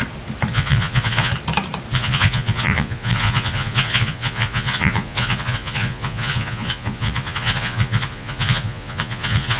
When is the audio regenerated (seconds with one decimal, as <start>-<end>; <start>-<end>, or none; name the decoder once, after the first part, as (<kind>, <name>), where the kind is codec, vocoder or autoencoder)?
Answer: 0.5-1.3 (vocoder, Vocos); 1.9-9.6